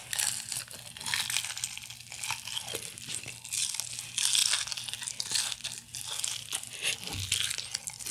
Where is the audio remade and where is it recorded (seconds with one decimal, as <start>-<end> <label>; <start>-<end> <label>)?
0.0-8.1 recorded